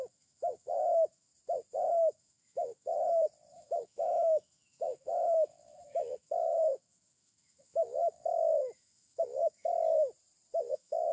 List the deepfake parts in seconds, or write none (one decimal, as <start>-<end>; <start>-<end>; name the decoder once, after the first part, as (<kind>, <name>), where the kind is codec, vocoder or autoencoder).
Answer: 0.0-1.3 (autoencoder, DAC-VAE); 1.9-2.9; 3.5-9.7; 10.7-11.1